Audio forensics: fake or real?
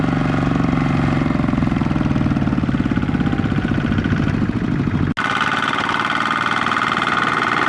real